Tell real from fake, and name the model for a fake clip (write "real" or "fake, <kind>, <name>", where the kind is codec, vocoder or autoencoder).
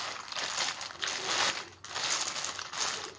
real